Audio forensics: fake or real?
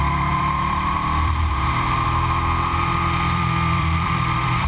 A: fake